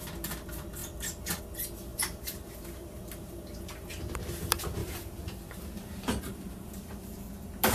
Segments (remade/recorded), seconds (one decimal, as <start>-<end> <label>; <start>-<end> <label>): 0.0-1.9 recorded; 1.9-4.0 remade; 4.0-4.8 recorded; 4.8-6.7 remade; 6.7-7.7 recorded